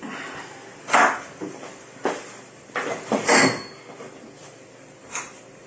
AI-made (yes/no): no